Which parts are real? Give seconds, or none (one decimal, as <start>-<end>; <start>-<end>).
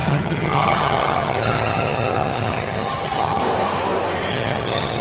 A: 3.4-4.3